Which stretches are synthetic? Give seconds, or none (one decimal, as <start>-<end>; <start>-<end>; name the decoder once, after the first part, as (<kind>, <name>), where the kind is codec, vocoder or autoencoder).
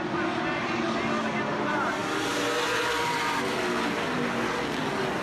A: none